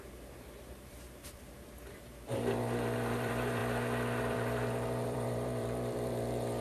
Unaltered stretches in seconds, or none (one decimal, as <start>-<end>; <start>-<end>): 3.6-4.2